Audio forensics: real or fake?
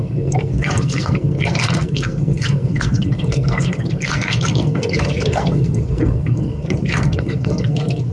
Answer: fake